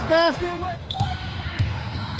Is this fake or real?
fake